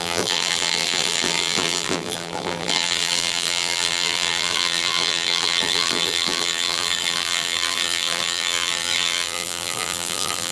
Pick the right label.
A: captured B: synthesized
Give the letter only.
B